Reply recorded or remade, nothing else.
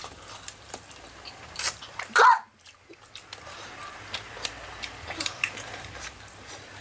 remade